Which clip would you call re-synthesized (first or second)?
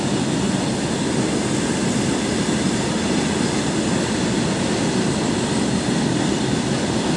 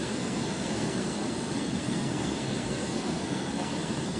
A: second